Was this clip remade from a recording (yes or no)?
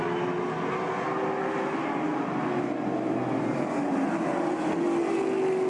no